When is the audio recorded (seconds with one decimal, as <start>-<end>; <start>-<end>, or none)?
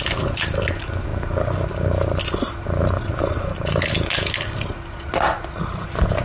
0.0-6.2